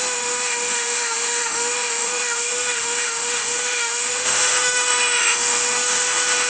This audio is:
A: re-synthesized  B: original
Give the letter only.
A